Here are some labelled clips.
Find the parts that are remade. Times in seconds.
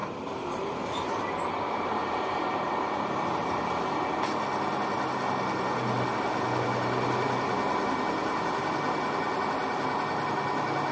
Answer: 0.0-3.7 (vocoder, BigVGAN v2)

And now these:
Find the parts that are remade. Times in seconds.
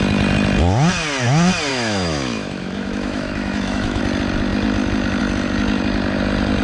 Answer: 1.7-4.0 (autoencoder, DAC-VAE)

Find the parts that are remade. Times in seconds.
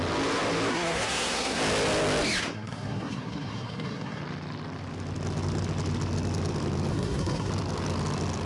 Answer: 0.7-1.6 (codec, SNAC); 2.4-4.2; 6.9-7.5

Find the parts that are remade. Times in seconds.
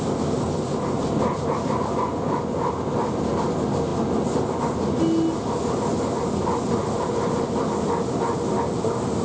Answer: none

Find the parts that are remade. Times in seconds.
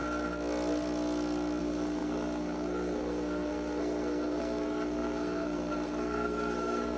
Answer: 1.6-7.0 (codec, SNAC)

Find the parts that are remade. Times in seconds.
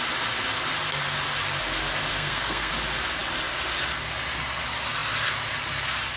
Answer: 2.1-2.7 (codec, SNAC)